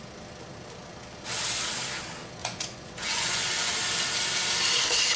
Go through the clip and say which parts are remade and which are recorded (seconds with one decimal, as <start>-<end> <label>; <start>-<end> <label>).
0.0-2.4 recorded; 2.4-3.7 remade; 3.7-5.2 recorded